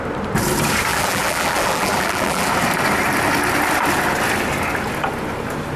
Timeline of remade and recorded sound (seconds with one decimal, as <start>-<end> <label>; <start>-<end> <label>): 0.0-0.9 recorded; 0.9-2.5 remade; 2.5-5.8 recorded